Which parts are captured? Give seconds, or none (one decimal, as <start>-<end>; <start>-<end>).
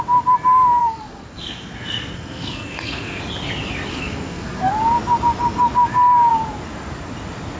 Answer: 0.0-0.8; 3.2-3.9; 4.7-7.6